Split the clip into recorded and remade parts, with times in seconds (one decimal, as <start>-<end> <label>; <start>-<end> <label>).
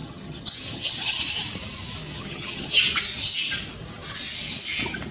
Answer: 0.0-1.2 remade; 1.2-2.0 recorded; 2.0-2.8 remade; 2.8-5.1 recorded